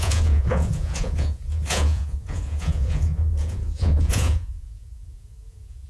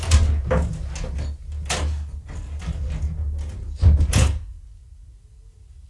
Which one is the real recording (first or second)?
second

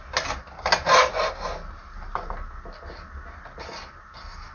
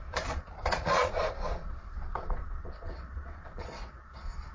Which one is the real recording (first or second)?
first